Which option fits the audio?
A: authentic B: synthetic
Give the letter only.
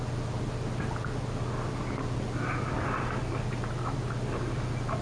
A